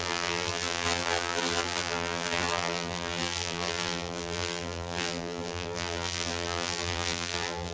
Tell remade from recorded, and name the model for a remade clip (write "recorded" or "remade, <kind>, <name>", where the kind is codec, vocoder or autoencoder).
remade, vocoder, BigVGAN v2